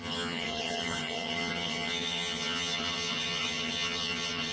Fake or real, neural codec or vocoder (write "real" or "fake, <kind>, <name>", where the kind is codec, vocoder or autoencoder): fake, vocoder, HiFi-GAN